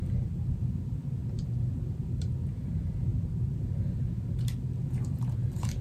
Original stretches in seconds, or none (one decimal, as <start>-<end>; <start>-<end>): 0.0-3.1; 3.6-5.8